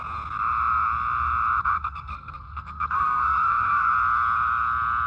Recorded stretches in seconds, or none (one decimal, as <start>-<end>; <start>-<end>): 0.0-1.6; 3.9-5.1